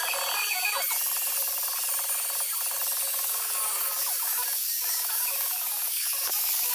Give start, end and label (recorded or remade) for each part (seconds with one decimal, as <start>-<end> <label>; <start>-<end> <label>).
0.0-3.1 recorded; 3.1-6.7 remade

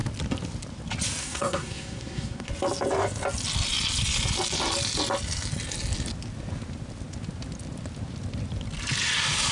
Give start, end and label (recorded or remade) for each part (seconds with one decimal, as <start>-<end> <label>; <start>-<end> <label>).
0.0-1.2 recorded; 1.2-2.5 remade; 2.5-9.5 recorded